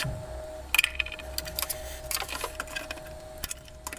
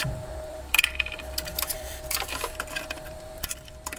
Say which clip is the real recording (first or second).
first